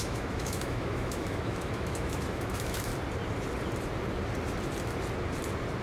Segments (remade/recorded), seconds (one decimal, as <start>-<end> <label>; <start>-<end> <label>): 0.0-2.9 remade; 2.9-5.8 recorded